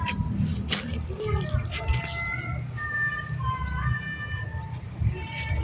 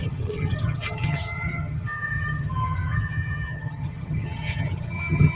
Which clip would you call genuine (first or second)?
first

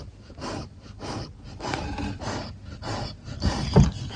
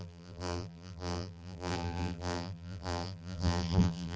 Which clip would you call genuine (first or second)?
first